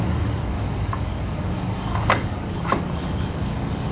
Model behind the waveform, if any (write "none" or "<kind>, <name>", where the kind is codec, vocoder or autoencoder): codec, DAC